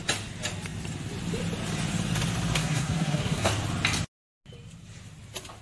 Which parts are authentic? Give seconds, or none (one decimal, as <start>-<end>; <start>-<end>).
0.0-2.6; 3.5-5.6